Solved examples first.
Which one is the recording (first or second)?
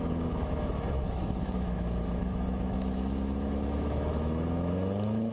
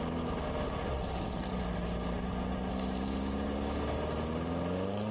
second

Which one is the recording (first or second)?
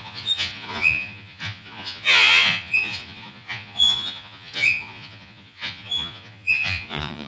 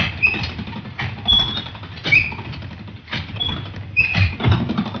second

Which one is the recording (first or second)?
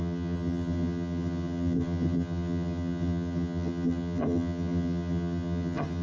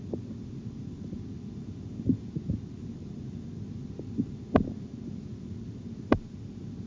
second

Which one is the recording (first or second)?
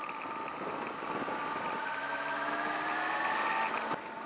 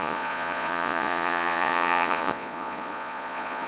first